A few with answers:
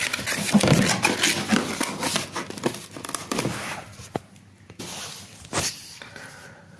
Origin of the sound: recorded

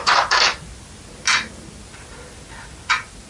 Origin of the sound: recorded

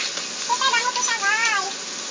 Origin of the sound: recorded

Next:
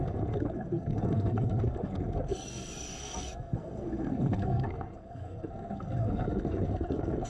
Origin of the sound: remade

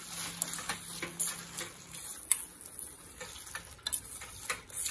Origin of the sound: recorded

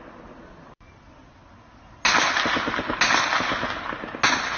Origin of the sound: recorded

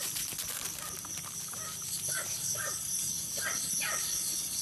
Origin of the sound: recorded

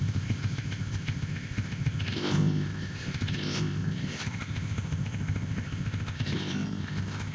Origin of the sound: remade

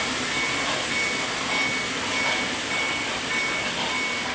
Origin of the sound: recorded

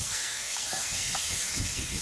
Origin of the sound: remade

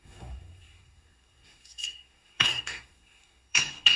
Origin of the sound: remade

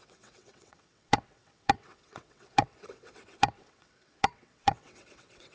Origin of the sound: remade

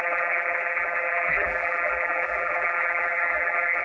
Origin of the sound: remade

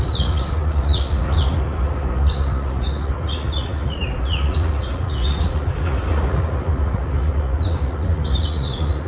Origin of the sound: remade